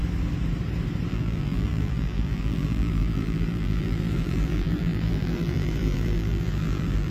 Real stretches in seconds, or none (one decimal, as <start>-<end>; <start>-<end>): 0.0-1.1